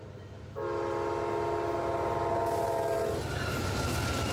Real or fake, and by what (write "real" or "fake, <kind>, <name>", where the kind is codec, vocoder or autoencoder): real